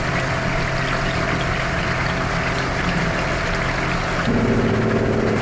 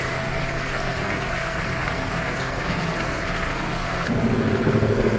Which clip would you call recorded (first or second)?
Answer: first